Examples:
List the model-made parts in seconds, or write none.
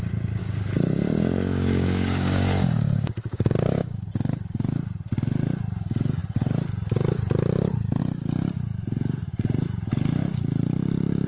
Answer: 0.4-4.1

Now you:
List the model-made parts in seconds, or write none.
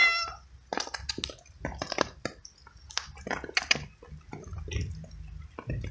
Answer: none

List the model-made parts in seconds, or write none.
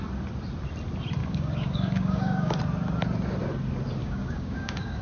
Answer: 1.2-2.6; 4.0-5.0